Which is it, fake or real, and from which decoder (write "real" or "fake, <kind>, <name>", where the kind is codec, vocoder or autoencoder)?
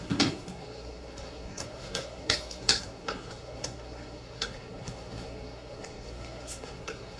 fake, codec, SNAC